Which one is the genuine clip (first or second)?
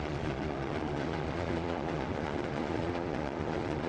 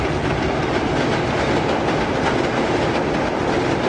second